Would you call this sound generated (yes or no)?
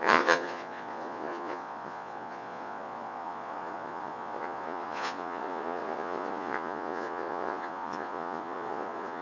yes